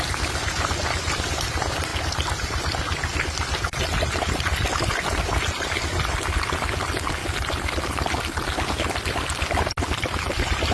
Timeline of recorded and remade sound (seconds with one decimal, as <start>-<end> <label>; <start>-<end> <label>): 0.0-1.9 remade; 1.9-6.2 recorded; 6.2-7.2 remade; 7.2-9.0 recorded; 9.0-10.7 remade